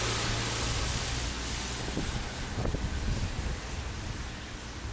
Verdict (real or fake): real